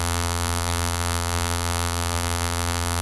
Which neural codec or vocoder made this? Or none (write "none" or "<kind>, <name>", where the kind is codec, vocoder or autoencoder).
vocoder, BigVGAN v2